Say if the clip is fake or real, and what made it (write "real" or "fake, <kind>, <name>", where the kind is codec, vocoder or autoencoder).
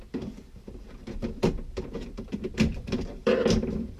fake, vocoder, BigVGAN v2